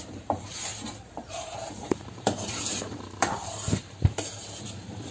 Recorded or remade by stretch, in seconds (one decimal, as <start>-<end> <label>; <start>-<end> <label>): 0.0-5.1 remade